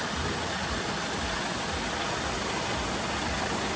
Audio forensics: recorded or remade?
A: recorded